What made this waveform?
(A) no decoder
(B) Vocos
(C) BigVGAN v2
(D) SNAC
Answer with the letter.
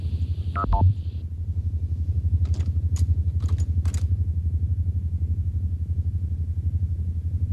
A